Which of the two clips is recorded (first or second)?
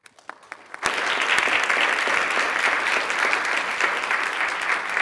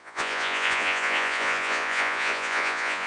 first